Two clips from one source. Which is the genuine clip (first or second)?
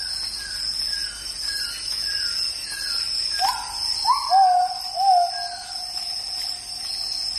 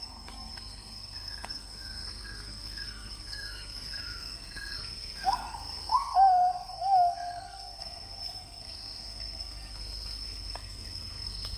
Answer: first